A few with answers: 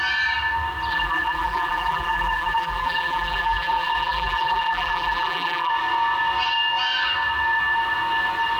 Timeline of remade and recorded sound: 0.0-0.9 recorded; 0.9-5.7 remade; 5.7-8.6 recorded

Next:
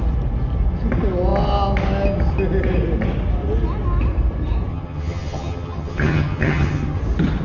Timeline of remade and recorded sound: 0.0-4.7 recorded; 4.7-7.0 remade; 7.0-7.4 recorded